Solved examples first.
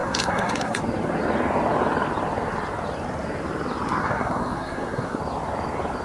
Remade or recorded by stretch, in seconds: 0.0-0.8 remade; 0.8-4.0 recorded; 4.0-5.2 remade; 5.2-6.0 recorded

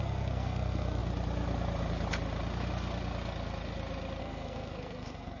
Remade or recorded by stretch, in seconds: 0.0-1.0 remade; 1.0-4.2 recorded; 4.2-5.4 remade

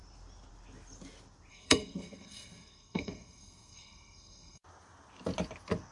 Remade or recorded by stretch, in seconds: 0.0-1.5 recorded; 1.5-4.6 remade; 4.6-5.9 recorded

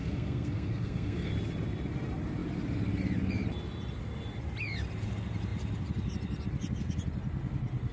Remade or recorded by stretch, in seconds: 0.0-1.3 remade; 1.3-7.9 recorded